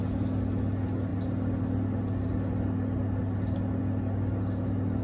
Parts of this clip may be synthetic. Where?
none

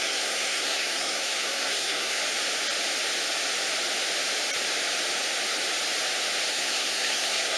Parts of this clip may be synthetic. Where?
0.0-2.2; 6.5-7.6

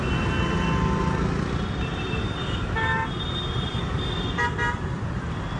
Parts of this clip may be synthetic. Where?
1.9-4.1